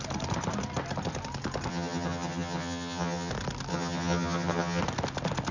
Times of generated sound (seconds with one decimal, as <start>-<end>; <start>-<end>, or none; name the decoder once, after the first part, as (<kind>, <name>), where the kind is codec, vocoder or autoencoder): 1.7-3.3 (vocoder, HiFi-GAN); 3.7-4.8